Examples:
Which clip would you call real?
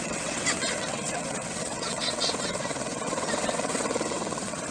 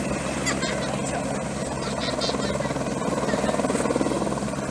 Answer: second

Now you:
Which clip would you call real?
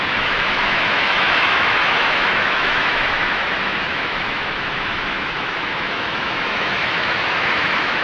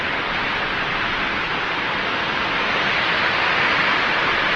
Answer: second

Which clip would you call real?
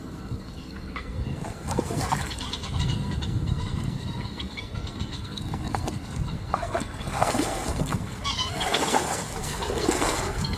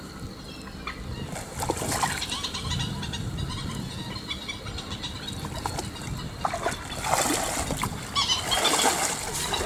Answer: second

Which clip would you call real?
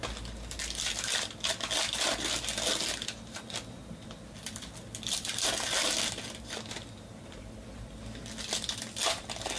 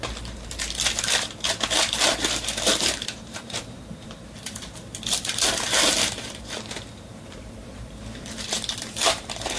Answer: first